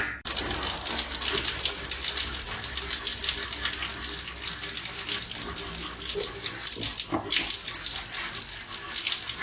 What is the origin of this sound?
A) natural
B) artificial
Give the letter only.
A